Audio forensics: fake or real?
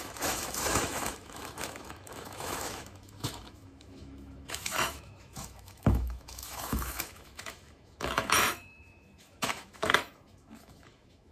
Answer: fake